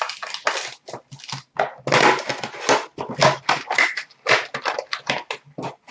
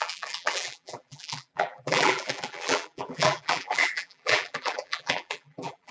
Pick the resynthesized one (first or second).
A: second